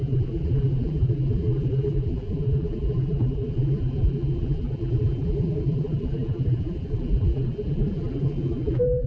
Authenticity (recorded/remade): remade